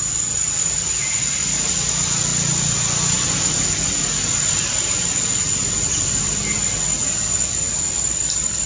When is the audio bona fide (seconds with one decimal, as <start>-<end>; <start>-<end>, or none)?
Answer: 0.0-8.7